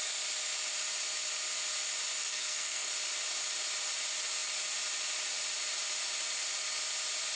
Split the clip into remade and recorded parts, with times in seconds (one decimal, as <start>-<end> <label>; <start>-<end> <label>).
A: 0.0-2.2 recorded; 2.2-2.9 remade; 2.9-7.4 recorded